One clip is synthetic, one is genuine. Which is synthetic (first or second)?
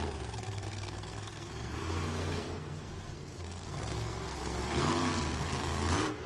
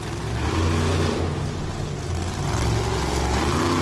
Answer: first